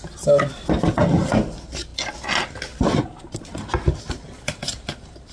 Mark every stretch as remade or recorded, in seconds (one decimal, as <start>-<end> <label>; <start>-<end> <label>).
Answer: 0.0-5.3 recorded